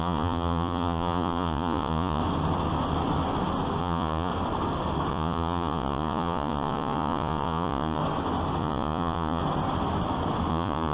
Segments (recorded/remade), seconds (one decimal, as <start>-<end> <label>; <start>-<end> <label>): 0.0-2.2 remade; 2.2-3.8 recorded; 3.8-4.3 remade; 4.3-5.1 recorded; 5.1-8.0 remade; 8.0-8.6 recorded; 8.6-9.4 remade; 9.4-10.5 recorded; 10.5-10.9 remade